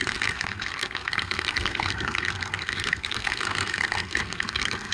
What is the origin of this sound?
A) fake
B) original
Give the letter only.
A